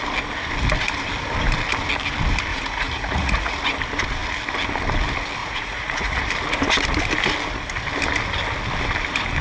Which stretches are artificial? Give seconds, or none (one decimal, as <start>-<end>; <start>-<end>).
2.5-3.6; 5.4-6.3